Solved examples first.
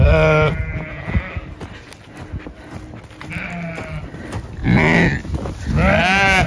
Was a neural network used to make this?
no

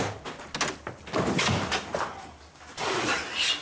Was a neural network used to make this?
no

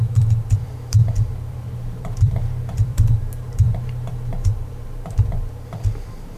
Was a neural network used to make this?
yes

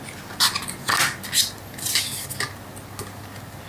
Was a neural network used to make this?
no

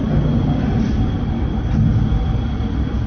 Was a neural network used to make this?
yes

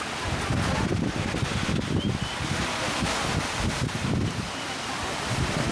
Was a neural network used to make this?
yes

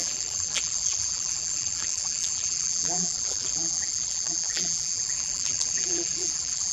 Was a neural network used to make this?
yes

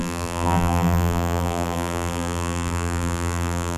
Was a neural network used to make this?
yes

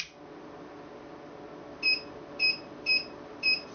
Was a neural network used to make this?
no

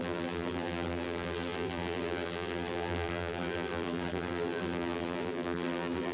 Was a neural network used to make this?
yes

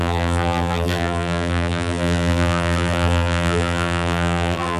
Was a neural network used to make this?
yes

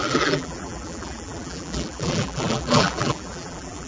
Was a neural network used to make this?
yes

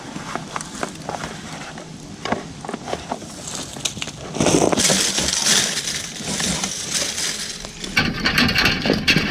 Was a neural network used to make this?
no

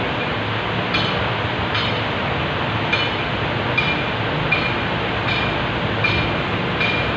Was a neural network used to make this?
no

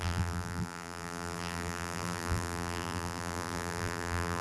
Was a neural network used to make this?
yes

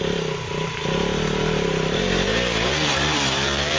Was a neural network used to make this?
yes